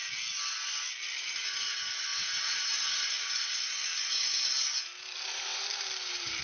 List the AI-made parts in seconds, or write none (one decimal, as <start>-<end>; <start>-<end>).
2.1-3.5; 5.5-6.4